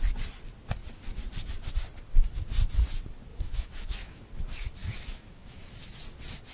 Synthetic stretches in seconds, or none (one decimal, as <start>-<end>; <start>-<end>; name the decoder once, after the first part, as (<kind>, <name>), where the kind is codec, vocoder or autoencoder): 3.3-4.2 (autoencoder, DAC-VAE); 4.8-5.6